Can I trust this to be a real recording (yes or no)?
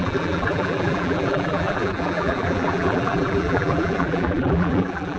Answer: no